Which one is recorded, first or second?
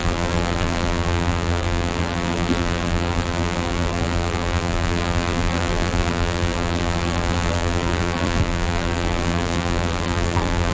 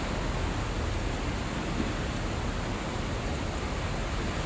second